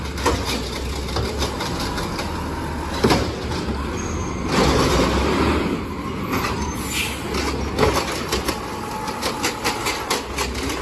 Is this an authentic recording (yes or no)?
yes